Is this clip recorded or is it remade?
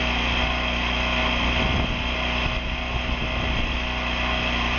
recorded